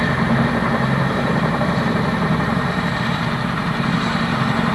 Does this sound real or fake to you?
fake